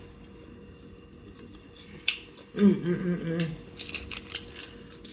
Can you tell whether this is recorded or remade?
recorded